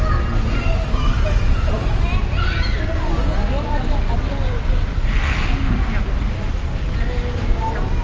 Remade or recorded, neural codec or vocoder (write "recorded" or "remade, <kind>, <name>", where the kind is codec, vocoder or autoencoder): recorded